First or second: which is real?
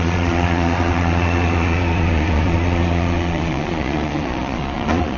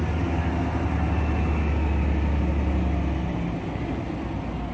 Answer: second